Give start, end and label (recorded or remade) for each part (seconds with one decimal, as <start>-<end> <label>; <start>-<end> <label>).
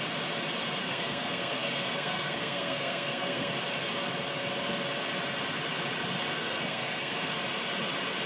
0.0-0.8 recorded; 0.8-3.5 remade; 3.5-6.3 recorded; 6.3-7.3 remade; 7.3-8.3 recorded